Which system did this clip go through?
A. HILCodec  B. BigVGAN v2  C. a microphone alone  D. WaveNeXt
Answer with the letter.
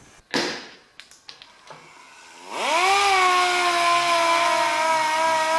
C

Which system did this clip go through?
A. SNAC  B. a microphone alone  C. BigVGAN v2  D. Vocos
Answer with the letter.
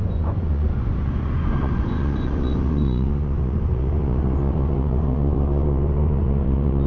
D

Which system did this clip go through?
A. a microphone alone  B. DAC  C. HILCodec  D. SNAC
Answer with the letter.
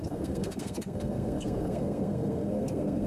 D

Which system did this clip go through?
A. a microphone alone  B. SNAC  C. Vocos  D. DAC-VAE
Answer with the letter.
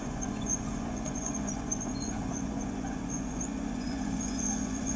C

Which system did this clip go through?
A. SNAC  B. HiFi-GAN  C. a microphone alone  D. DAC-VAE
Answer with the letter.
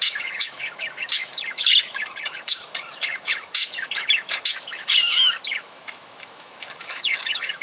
D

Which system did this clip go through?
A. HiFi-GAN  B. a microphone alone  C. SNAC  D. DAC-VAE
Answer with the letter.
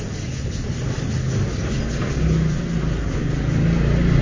B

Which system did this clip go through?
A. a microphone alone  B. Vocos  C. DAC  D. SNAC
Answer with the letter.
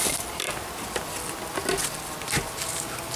A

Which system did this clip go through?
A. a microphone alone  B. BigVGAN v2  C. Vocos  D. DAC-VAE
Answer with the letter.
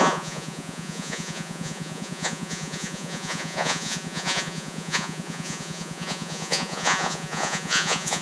C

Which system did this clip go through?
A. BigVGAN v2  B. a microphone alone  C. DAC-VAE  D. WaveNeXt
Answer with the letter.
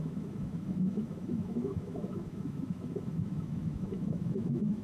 C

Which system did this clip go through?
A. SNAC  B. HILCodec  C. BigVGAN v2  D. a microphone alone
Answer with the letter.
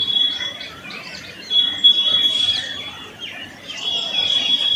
C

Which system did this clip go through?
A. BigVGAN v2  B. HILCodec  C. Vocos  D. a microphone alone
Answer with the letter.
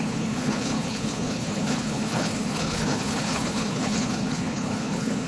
B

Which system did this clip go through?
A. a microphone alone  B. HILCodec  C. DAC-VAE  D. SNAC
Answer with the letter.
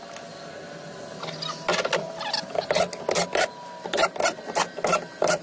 A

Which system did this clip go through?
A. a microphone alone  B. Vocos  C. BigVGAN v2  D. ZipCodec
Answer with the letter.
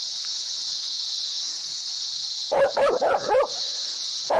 B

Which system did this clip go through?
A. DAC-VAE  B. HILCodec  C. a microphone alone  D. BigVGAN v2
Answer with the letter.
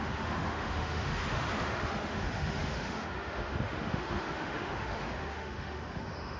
A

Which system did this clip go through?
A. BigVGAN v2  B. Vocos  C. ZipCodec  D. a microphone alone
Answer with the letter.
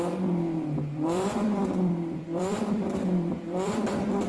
A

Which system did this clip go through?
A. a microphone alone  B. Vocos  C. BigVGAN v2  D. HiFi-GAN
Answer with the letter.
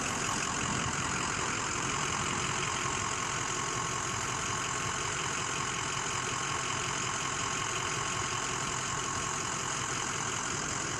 C